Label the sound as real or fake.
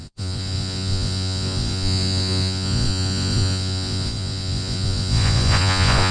fake